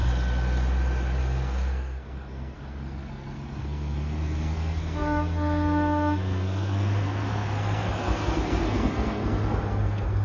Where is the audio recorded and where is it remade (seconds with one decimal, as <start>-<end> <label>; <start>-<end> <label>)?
0.0-1.2 recorded; 1.2-10.2 remade